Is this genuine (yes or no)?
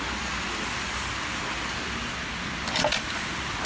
yes